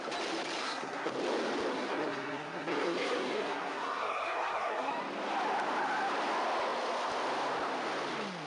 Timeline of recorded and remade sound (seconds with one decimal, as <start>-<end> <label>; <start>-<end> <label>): 0.0-0.6 recorded; 0.6-1.1 remade; 1.1-1.7 recorded; 1.7-4.9 remade; 4.9-8.5 recorded